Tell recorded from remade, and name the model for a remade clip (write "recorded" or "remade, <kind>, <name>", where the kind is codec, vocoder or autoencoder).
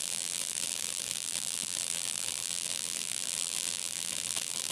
remade, vocoder, BigVGAN v2